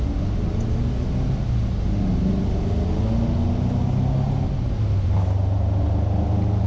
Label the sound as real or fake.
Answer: real